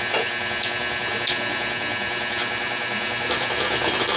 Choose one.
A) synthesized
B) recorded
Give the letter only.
B